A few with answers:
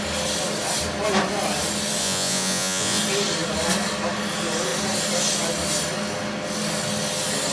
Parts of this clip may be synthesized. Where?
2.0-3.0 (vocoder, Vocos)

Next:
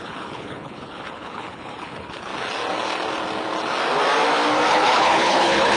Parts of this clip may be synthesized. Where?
0.0-2.3 (codec, HILCodec); 4.7-5.8